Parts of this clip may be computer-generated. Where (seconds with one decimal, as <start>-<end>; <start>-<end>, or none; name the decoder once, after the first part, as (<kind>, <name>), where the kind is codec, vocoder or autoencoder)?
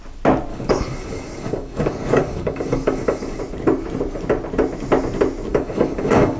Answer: 0.5-3.4 (codec, DAC); 5.5-6.4